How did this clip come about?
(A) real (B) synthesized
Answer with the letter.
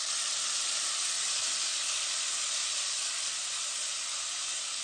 A